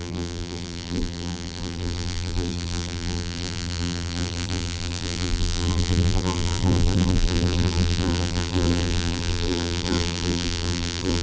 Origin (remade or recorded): remade